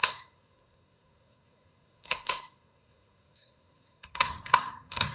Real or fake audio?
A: fake